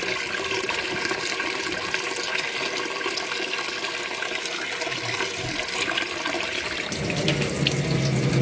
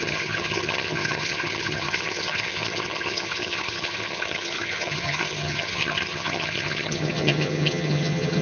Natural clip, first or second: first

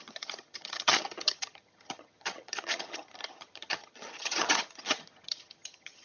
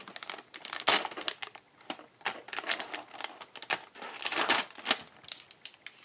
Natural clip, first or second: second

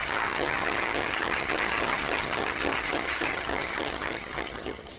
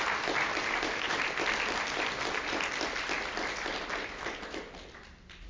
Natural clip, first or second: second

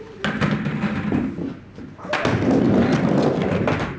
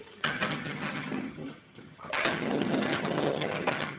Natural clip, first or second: first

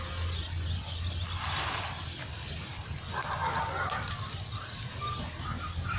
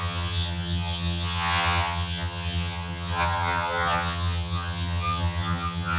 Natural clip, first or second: first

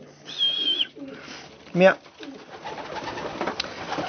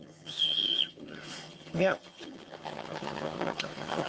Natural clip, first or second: first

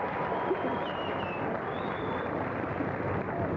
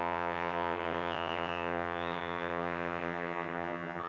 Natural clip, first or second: first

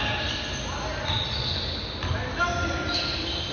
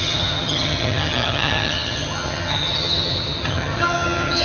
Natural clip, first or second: first